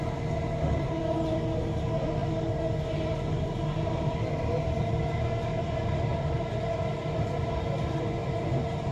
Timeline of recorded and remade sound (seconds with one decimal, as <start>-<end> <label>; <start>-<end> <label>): 0.0-8.9 recorded